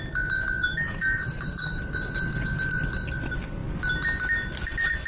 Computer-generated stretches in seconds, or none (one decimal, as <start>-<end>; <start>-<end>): 0.6-1.8